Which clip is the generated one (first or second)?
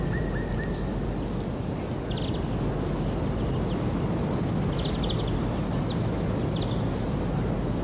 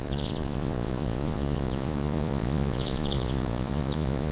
second